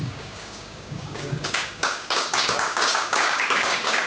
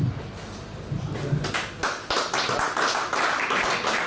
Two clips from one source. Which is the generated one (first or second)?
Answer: first